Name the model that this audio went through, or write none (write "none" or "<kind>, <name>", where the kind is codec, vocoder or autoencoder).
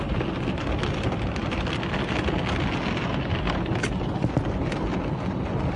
none